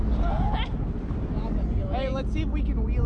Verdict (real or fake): real